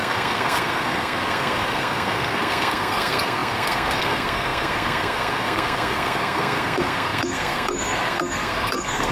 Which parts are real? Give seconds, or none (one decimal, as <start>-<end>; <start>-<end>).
none